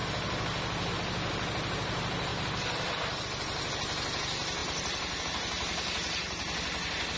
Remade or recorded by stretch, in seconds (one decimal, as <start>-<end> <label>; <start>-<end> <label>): 0.0-2.3 recorded; 2.3-3.2 remade; 3.2-4.6 recorded; 4.6-5.2 remade; 5.2-7.2 recorded